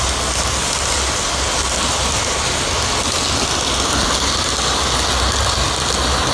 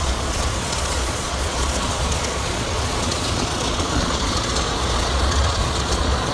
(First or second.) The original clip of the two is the first